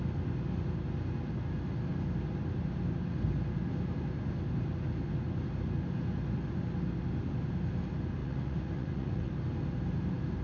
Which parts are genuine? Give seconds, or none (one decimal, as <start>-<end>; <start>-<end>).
0.0-8.2; 9.3-10.4